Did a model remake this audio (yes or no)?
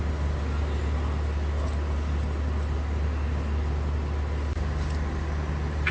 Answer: no